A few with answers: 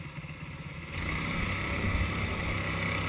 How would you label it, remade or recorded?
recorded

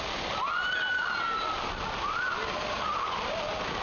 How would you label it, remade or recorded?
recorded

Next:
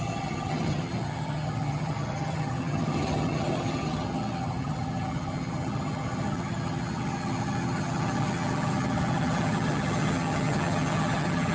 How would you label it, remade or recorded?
remade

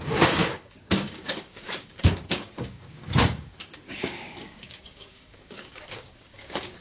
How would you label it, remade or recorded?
remade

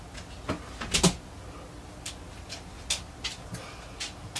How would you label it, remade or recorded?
recorded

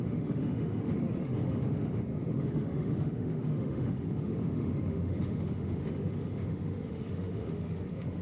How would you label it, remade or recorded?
remade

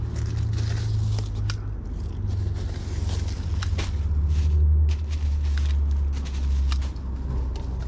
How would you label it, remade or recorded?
recorded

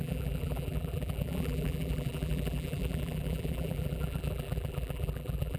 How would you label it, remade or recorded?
remade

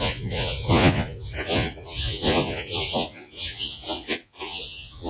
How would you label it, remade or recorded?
remade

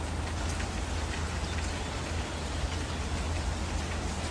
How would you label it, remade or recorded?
recorded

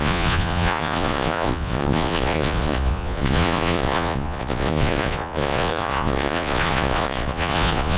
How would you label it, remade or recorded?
remade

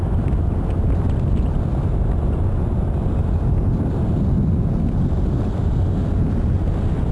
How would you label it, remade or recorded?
recorded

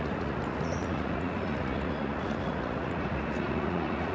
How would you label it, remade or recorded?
remade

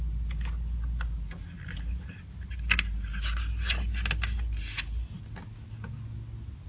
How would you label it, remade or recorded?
recorded